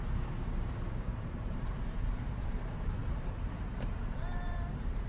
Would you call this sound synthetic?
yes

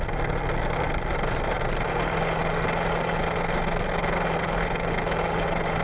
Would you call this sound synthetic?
no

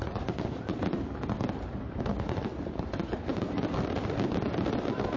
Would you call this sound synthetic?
yes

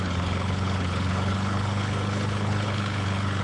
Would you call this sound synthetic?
yes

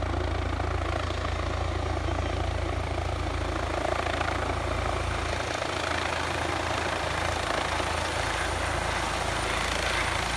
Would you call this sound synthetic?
no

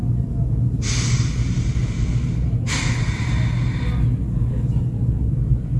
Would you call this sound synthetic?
no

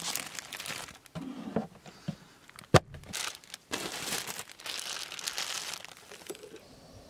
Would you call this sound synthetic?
no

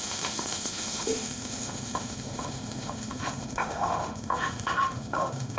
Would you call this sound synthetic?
yes